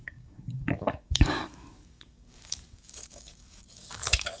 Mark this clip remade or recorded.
remade